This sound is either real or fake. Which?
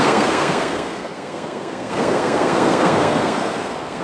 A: fake